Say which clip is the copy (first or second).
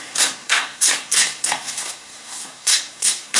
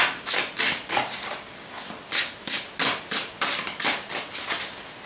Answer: first